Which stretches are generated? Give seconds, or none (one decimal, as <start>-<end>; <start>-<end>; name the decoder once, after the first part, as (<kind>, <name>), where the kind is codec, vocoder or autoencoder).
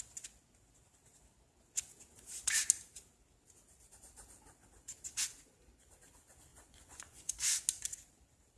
6.5-7.3 (vocoder, Vocos)